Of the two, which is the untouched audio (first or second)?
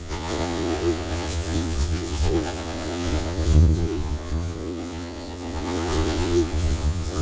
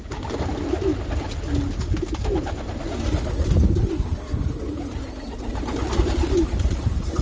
second